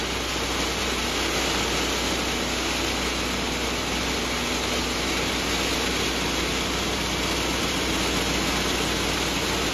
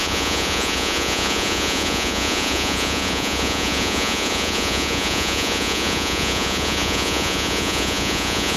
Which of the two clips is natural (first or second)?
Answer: first